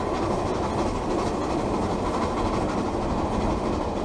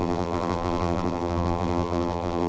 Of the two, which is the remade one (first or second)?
second